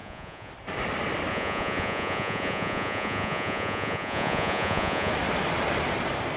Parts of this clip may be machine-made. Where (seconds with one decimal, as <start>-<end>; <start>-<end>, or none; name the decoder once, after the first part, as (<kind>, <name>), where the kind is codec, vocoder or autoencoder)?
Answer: 0.0-0.5 (vocoder, Vocos); 1.3-5.1